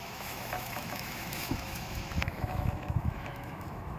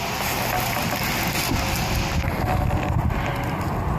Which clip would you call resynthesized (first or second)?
first